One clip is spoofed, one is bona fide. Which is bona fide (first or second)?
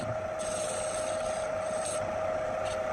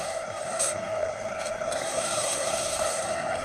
first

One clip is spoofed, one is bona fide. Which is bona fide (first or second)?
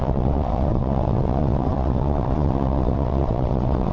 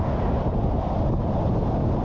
second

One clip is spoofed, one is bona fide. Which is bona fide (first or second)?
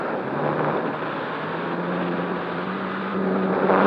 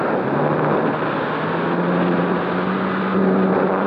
second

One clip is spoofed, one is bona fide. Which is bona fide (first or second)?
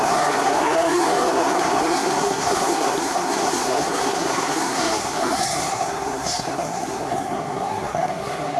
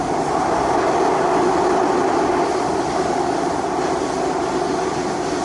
second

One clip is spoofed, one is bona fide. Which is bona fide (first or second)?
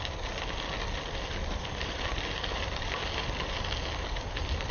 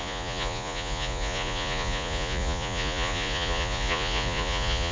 first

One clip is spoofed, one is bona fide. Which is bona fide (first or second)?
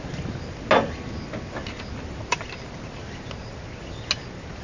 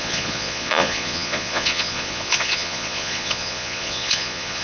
first